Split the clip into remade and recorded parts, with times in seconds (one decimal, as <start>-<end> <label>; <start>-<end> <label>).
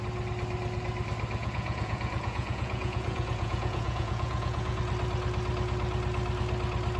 0.0-1.4 recorded; 1.4-4.8 remade; 4.8-7.0 recorded